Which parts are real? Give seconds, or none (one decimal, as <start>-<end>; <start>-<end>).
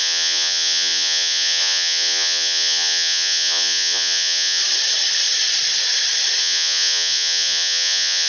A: 4.6-6.4